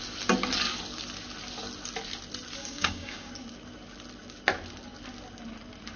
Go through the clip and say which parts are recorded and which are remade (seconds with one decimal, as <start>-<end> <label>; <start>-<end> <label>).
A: 0.0-2.6 recorded; 2.6-3.3 remade; 3.3-6.0 recorded